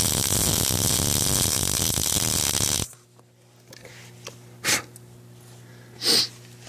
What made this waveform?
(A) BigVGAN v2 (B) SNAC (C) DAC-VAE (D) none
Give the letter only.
D